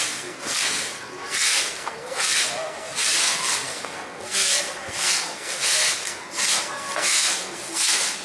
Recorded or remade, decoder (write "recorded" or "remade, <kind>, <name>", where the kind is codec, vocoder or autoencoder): remade, codec, SNAC